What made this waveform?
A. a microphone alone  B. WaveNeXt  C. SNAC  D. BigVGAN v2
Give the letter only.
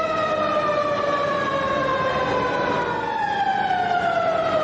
A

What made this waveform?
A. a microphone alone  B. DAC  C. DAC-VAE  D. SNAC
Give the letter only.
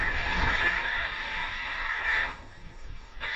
B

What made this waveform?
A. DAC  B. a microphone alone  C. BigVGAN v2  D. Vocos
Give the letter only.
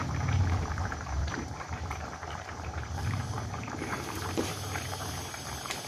C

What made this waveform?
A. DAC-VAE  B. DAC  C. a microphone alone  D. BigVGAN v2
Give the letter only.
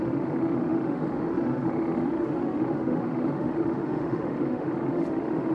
A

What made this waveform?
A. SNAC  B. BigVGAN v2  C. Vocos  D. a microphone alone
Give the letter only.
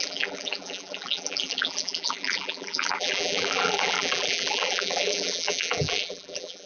B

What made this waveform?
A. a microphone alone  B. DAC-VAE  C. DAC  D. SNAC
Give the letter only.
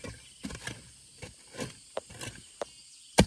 A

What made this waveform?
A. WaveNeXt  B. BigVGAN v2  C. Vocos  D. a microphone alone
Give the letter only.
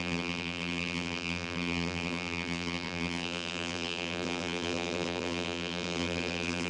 B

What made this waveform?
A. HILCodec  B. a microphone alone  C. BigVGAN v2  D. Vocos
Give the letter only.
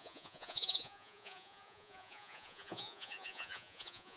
D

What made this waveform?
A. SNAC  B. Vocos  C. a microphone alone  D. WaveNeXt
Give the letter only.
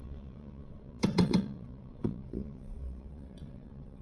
D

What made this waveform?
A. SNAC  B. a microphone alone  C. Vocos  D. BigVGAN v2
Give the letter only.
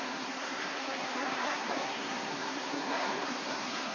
A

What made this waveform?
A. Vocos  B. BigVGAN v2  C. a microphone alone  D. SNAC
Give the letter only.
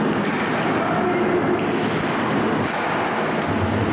C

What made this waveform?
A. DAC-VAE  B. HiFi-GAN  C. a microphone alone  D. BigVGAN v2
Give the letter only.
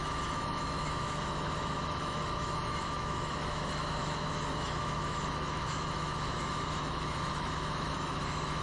A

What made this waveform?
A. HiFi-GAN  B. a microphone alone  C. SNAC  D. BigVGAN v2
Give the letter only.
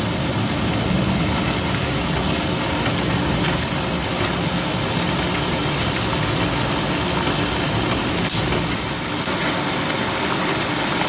B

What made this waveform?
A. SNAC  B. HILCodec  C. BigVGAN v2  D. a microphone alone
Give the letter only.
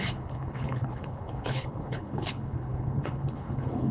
B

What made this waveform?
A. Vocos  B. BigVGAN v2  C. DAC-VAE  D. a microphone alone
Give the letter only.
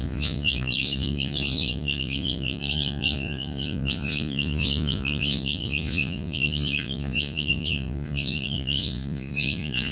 A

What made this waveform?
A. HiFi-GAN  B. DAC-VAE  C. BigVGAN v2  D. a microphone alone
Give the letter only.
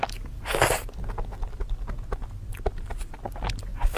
D